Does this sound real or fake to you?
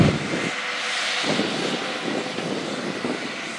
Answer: real